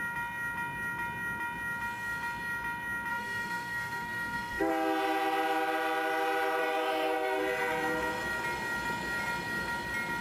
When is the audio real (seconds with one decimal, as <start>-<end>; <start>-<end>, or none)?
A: 0.0-3.1; 4.7-6.6; 7.4-10.2